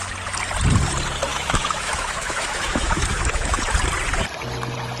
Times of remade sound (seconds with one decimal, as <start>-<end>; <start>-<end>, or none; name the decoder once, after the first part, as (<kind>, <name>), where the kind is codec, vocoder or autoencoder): 1.3-3.6 (autoencoder, DAC-VAE)